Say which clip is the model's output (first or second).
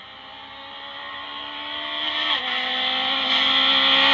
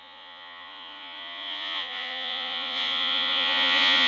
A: second